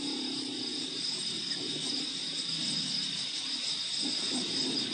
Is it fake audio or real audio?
real